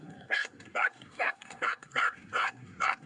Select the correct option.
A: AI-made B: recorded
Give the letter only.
A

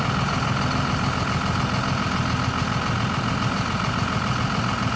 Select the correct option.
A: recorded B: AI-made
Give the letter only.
A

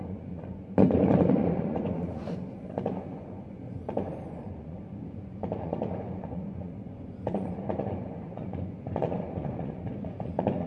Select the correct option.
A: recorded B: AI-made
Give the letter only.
B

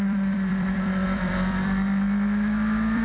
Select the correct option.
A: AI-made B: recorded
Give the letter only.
A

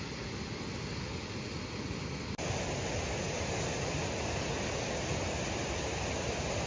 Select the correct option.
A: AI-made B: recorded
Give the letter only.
B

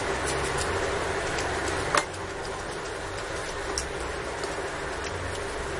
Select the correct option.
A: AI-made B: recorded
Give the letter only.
B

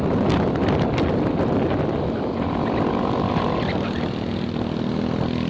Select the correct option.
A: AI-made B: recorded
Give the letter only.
B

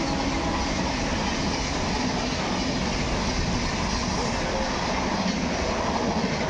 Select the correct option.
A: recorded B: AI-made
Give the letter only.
A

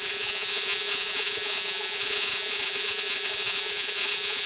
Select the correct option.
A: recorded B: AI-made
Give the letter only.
B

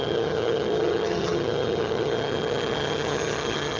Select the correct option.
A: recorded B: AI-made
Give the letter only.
B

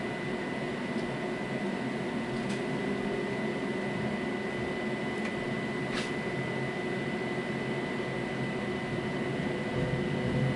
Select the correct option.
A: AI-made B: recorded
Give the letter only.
B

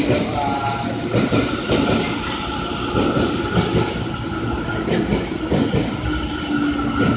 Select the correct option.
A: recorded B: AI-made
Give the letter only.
A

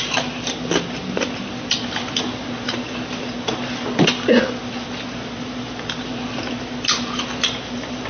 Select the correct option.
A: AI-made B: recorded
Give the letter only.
B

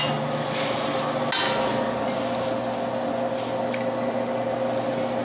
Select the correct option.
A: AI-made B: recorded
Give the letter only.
B